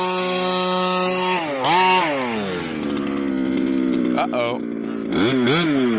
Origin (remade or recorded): recorded